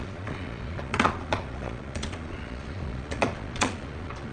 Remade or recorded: remade